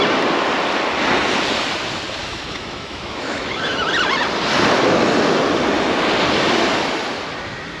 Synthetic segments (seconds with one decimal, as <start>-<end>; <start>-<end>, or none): 2.2-3.9